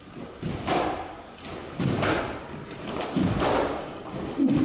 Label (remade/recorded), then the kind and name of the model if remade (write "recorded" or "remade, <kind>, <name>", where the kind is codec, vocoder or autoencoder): remade, vocoder, BigVGAN v2